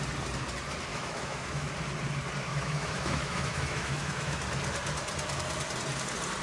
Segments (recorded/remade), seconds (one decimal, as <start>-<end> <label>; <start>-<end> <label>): 0.0-0.9 recorded; 0.9-1.7 remade; 1.7-2.5 recorded; 2.5-4.4 remade; 4.4-6.4 recorded